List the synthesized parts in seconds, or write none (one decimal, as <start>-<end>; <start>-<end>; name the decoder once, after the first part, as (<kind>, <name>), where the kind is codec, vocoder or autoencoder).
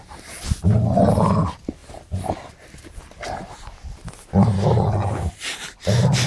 none